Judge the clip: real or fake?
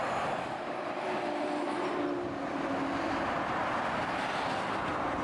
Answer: real